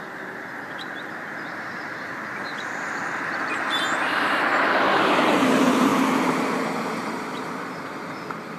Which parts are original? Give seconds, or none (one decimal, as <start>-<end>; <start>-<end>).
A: 0.0-8.6